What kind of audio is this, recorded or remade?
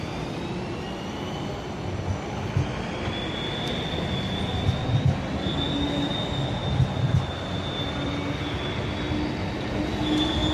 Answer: recorded